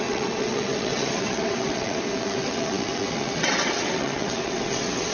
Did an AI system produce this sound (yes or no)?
yes